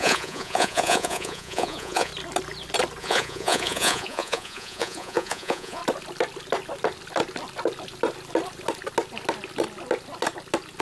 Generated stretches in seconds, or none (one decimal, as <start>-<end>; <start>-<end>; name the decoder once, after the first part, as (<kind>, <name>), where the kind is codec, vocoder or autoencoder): 0.0-2.1 (vocoder, Vocos); 3.0-5.8